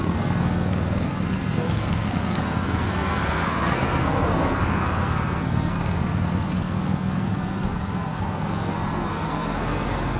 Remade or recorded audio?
remade